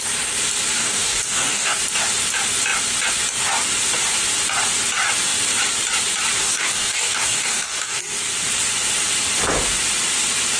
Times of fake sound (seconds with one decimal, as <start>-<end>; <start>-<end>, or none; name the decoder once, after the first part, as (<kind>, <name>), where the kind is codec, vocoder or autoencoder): 0.8-1.8 (codec, DAC); 6.4-8.0